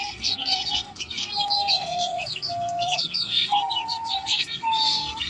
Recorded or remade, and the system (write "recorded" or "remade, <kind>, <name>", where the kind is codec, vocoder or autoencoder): remade, codec, SNAC